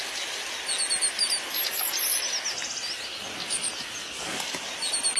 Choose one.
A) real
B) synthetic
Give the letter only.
A